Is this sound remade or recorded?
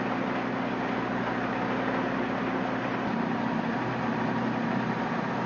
recorded